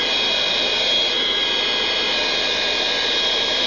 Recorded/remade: recorded